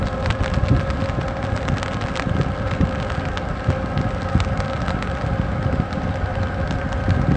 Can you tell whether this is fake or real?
real